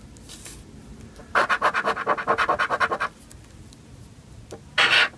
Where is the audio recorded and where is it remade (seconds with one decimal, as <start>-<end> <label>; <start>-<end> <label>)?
0.0-5.2 recorded